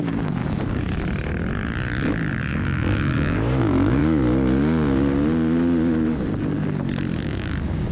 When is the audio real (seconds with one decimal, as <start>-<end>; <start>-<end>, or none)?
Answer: 0.4-2.5; 4.0-7.2